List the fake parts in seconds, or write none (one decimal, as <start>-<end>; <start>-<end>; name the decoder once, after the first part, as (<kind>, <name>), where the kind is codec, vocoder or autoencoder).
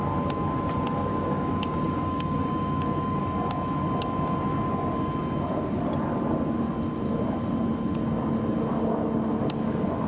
1.1-3.2 (codec, DAC)